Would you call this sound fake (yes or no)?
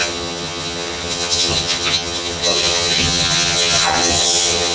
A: yes